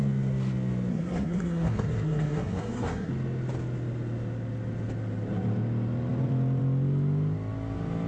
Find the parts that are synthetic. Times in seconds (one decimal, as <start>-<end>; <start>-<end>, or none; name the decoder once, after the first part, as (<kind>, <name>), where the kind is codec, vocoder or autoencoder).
0.9-3.1 (codec, SNAC)